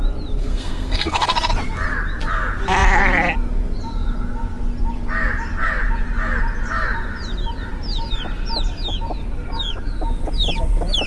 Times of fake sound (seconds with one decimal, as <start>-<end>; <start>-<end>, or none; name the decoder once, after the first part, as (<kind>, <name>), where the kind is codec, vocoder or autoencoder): 0.4-1.5 (codec, SNAC)